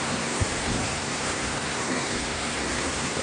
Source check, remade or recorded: remade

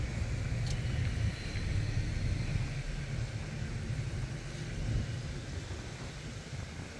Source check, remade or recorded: recorded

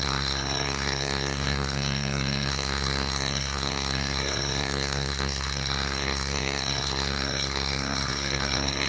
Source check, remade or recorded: remade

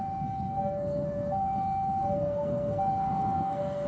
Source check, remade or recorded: remade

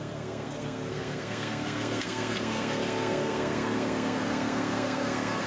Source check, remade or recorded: remade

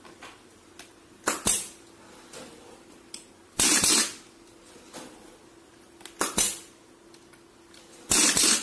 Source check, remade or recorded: recorded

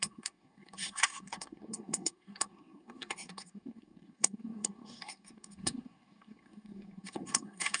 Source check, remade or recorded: remade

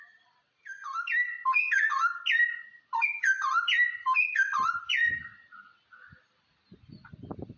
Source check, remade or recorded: recorded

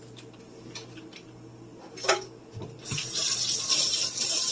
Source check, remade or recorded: recorded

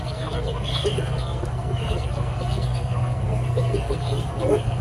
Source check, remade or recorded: remade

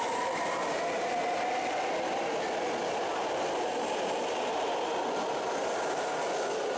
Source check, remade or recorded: recorded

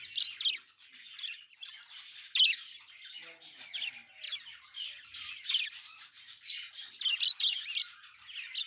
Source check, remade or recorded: recorded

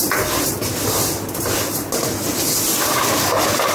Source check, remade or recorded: recorded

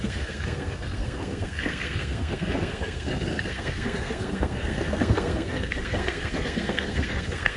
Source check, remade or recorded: remade